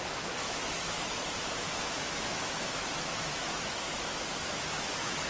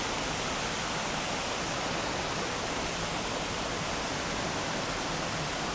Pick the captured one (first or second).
second